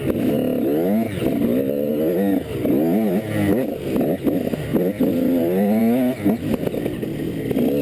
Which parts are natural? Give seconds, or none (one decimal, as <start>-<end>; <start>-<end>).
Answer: 0.0-4.7; 5.8-7.8